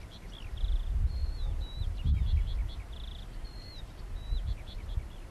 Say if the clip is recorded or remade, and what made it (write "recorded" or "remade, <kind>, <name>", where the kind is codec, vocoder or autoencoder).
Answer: recorded